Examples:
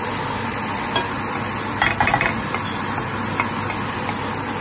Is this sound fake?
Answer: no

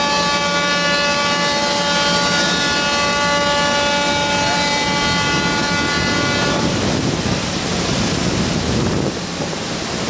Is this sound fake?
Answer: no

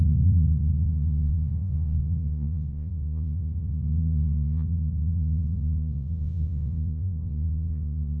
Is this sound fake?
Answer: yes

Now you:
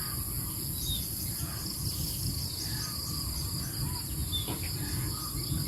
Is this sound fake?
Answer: no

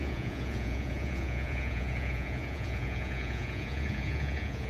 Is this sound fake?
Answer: yes